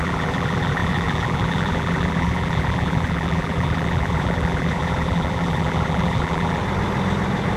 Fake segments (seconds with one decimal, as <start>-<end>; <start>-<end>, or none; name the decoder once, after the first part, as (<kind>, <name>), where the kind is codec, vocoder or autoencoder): 0.0-6.6 (vocoder, BigVGAN v2)